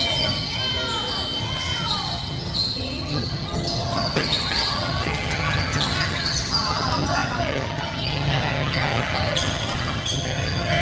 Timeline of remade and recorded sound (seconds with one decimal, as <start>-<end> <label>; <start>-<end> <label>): 0.0-0.6 remade; 0.6-1.4 recorded; 1.4-10.8 remade